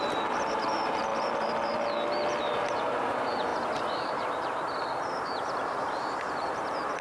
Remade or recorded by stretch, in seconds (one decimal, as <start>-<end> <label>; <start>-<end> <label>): 0.0-1.1 remade; 1.1-2.4 recorded; 2.4-7.0 remade